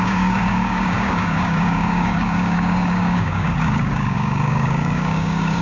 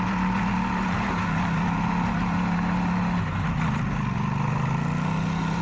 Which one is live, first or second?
second